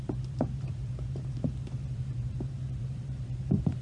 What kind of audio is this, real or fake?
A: fake